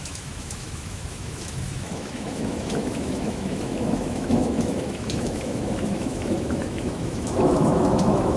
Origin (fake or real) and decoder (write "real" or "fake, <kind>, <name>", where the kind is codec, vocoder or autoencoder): fake, autoencoder, DAC-VAE